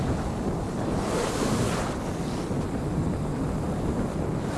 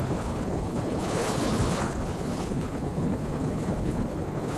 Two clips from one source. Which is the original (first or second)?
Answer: first